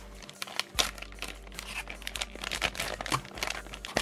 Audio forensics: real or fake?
real